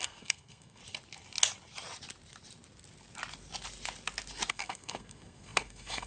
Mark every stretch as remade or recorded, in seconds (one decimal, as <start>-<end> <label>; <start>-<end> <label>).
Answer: 0.0-0.8 remade; 0.8-4.5 recorded; 4.5-6.1 remade